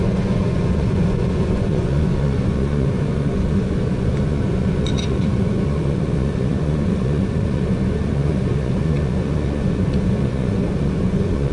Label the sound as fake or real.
fake